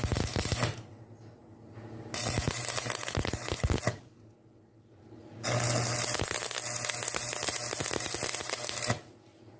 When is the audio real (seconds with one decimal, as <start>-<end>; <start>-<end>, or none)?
0.0-9.6